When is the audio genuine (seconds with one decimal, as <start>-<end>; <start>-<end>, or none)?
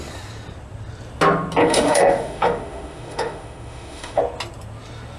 0.0-1.6; 4.2-5.2